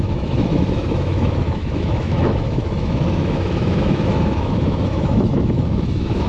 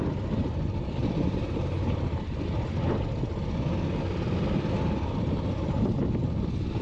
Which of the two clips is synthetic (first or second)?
first